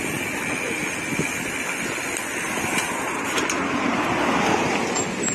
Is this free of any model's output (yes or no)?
yes